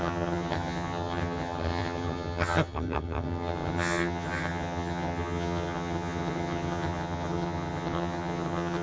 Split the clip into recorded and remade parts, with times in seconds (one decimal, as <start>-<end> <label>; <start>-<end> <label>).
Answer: 0.0-8.8 remade